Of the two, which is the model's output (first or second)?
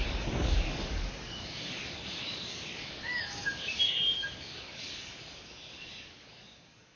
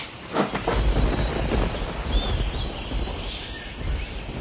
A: first